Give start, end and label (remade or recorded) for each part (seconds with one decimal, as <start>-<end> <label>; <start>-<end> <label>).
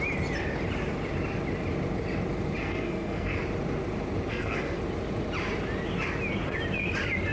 0.0-2.6 recorded; 2.6-3.4 remade; 3.4-4.3 recorded; 4.3-4.8 remade; 4.8-7.3 recorded